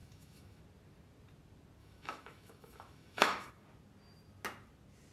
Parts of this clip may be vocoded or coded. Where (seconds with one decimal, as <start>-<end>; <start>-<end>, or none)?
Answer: 0.0-0.6; 1.8-3.5